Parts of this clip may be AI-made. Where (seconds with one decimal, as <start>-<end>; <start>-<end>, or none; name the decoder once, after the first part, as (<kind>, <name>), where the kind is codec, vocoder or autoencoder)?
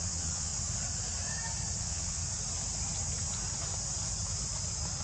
0.0-0.5 (vocoder, Vocos); 1.8-2.2